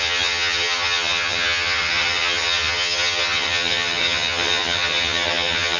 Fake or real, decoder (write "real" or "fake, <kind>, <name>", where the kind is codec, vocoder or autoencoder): fake, vocoder, HiFi-GAN